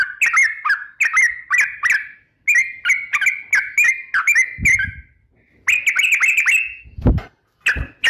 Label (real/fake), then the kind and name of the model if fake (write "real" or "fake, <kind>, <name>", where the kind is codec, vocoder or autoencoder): real